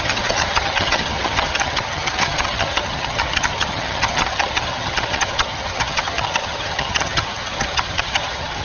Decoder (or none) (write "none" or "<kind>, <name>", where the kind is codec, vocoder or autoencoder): vocoder, HiFi-GAN